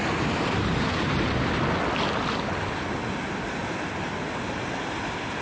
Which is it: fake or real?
real